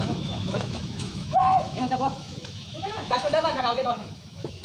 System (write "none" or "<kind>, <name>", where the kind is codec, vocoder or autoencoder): autoencoder, DAC-VAE